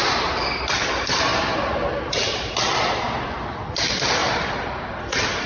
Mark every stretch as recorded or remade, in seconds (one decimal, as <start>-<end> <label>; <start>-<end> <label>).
0.0-5.5 recorded